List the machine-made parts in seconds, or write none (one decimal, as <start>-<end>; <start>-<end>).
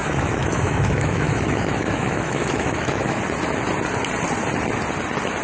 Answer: 0.0-3.2